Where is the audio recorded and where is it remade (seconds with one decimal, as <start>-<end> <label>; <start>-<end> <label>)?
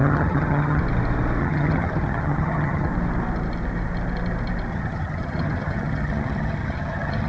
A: 0.0-0.8 remade; 0.8-1.4 recorded; 1.4-2.9 remade; 2.9-4.7 recorded; 4.7-7.3 remade